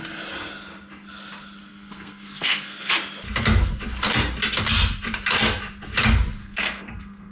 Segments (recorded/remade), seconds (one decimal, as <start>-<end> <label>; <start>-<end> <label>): 0.0-1.7 recorded; 1.7-2.9 remade; 2.9-6.4 recorded; 6.4-7.3 remade